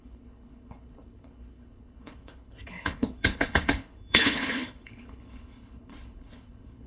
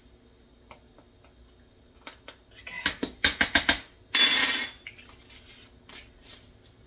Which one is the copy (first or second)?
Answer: first